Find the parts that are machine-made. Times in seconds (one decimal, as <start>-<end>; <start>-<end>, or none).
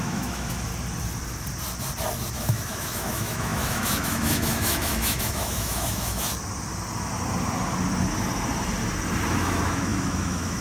0.0-0.7; 2.3-6.3; 9.3-10.6